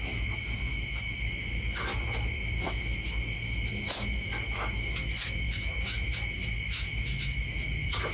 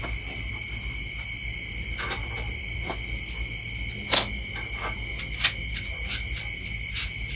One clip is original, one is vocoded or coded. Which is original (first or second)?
second